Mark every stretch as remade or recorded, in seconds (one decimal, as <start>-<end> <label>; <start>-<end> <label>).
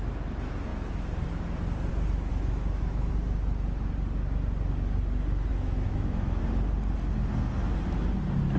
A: 0.0-2.3 recorded; 2.3-3.1 remade; 3.1-5.5 recorded; 5.5-6.4 remade; 6.4-8.6 recorded